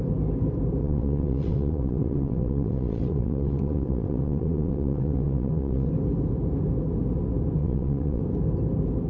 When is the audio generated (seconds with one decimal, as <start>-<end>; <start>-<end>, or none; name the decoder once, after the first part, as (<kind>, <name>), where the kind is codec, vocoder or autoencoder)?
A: 0.8-5.9 (vocoder, WaveNeXt); 7.6-8.2